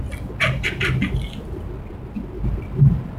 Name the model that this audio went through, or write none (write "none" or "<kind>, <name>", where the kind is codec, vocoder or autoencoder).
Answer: none